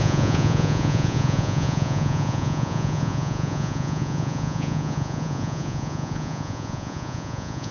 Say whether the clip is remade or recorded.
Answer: remade